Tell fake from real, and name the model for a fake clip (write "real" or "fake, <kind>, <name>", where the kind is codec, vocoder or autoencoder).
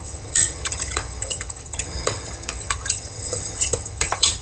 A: fake, vocoder, HiFi-GAN